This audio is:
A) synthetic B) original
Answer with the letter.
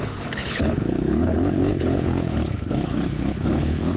A